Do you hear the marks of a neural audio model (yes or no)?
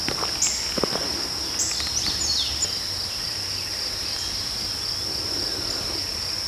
no